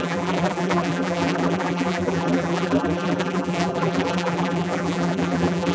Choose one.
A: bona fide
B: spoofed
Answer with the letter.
B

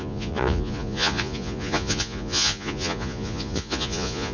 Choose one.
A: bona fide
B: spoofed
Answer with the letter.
B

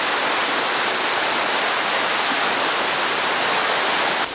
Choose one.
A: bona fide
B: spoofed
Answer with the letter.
A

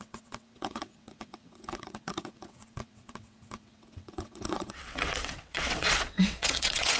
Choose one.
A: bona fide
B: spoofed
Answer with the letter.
B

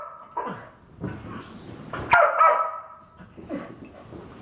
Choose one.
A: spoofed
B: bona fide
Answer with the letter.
B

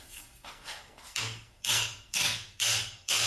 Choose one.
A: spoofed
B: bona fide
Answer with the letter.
A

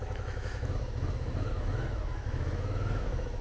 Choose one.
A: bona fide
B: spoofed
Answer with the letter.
B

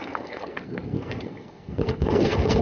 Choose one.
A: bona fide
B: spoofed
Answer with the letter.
B